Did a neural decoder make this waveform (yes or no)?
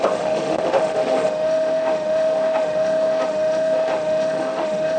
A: yes